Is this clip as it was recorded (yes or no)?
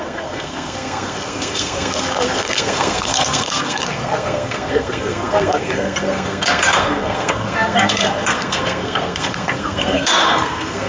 no